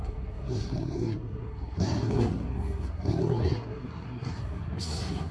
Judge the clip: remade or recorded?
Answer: remade